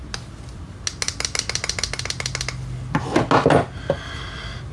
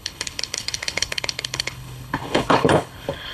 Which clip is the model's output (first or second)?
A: second